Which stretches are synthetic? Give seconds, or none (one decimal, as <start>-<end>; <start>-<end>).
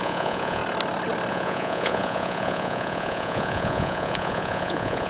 0.0-0.6; 1.3-5.1